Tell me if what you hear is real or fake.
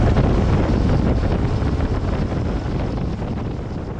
real